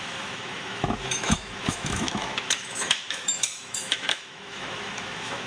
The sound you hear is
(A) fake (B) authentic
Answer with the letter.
A